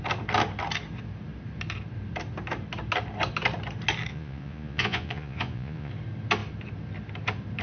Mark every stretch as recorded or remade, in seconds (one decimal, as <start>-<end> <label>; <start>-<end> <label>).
0.0-4.1 recorded; 4.1-5.9 remade; 5.9-7.6 recorded